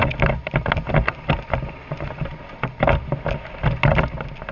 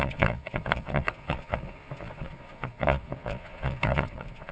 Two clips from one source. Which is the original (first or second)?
first